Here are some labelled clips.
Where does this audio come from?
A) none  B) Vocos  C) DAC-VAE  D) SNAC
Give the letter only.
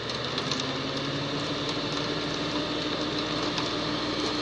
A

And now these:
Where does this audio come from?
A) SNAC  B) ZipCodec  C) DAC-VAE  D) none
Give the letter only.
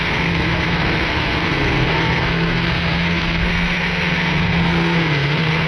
A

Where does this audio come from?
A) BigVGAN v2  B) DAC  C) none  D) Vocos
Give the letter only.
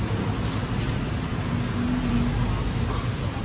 C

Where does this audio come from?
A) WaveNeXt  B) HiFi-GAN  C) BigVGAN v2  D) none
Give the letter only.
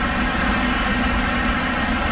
D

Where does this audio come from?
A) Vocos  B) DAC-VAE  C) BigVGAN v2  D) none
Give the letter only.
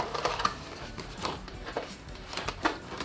C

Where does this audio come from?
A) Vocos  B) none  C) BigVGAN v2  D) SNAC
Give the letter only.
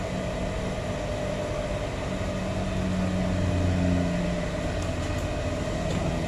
B